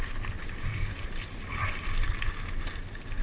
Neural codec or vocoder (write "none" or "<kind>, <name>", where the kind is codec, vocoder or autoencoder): none